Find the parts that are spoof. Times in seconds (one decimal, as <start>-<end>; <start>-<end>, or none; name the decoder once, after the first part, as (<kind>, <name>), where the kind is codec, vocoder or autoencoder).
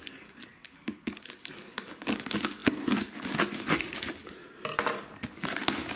0.0-4.4 (codec, DAC); 5.3-6.0